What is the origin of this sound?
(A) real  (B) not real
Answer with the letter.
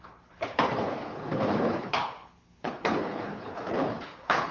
B